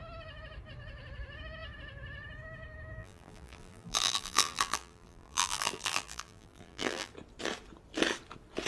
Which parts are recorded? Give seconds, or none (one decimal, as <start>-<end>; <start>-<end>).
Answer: 0.0-3.0; 7.1-8.7